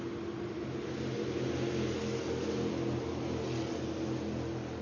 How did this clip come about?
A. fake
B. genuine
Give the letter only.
B